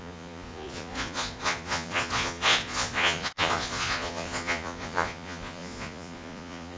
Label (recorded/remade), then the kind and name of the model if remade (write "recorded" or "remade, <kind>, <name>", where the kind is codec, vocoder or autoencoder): remade, vocoder, Vocos